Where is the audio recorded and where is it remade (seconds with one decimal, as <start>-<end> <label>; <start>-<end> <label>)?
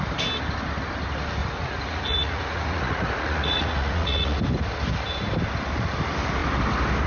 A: 0.0-1.4 recorded; 1.4-4.4 remade; 4.4-7.1 recorded